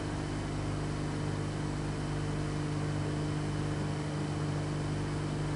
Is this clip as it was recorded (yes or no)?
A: yes